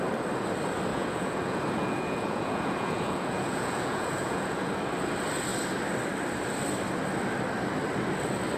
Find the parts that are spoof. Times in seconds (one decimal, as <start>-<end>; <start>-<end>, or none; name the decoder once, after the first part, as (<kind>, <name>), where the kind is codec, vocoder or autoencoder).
0.9-4.7 (vocoder, Vocos)